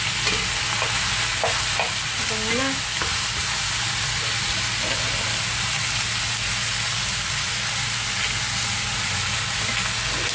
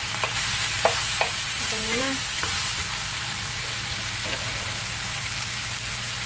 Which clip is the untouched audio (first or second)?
first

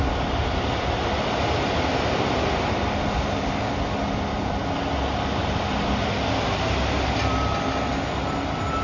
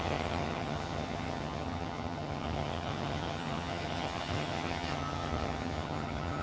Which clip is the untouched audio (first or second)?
first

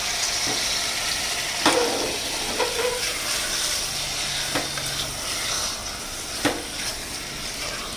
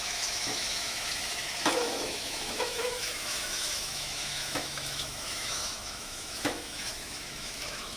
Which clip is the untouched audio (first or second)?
first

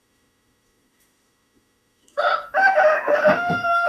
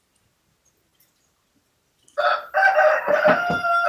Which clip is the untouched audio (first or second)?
second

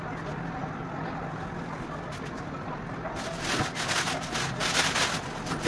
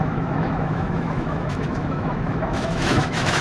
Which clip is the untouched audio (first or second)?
first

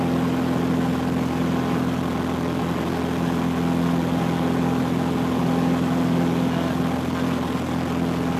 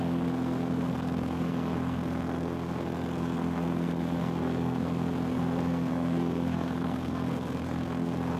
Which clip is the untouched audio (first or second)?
first